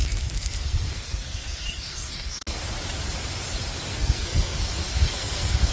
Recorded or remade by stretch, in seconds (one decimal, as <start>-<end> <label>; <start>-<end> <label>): 0.0-2.6 remade; 2.6-3.9 recorded; 3.9-5.7 remade